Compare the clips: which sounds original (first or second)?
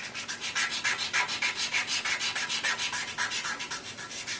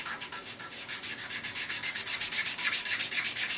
first